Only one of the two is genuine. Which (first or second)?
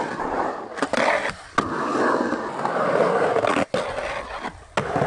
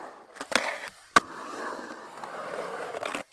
first